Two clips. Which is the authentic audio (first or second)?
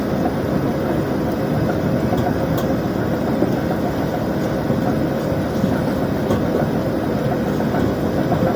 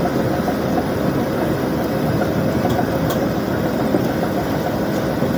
first